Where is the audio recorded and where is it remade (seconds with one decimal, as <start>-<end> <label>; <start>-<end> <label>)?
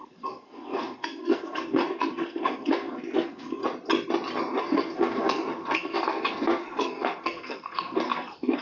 0.0-3.6 remade; 3.6-4.6 recorded; 4.6-8.6 remade